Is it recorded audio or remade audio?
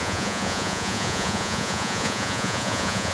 remade